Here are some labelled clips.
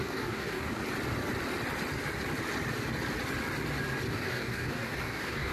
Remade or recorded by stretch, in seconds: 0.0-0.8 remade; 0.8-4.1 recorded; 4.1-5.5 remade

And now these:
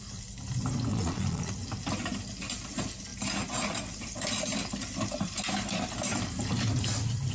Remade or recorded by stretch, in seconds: 0.0-0.9 recorded; 0.9-1.5 remade; 1.5-7.3 recorded